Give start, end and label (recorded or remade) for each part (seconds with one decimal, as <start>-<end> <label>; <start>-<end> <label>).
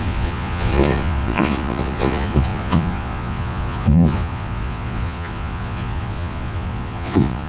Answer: 0.0-7.5 remade